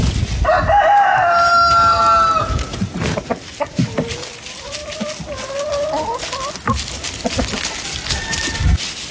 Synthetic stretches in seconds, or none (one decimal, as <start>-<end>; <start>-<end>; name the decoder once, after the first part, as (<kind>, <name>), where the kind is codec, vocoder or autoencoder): 2.7-4.3 (vocoder, BigVGAN v2)

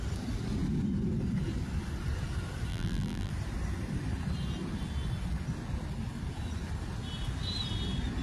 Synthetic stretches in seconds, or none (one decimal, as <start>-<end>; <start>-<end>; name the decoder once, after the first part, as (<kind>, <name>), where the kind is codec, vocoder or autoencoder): 2.7-3.3 (vocoder, BigVGAN v2)